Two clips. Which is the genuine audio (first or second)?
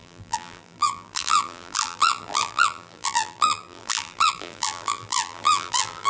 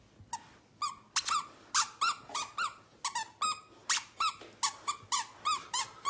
second